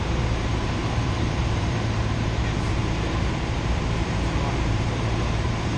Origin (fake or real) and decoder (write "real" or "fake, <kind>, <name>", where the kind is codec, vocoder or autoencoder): fake, vocoder, BigVGAN v2